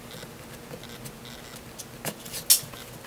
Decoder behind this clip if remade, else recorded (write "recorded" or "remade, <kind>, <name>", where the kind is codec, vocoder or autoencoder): recorded